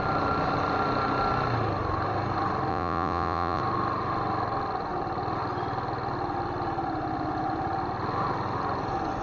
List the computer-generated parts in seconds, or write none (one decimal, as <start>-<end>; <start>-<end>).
2.7-3.6